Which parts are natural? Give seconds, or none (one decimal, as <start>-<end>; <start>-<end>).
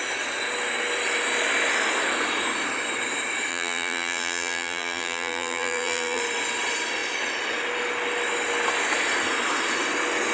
0.0-3.5; 6.2-10.3